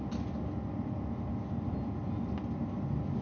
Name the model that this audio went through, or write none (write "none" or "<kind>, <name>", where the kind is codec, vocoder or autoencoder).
none